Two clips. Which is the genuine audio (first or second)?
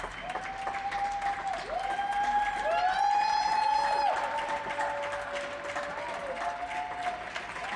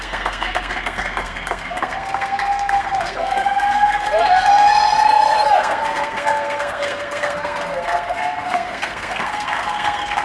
first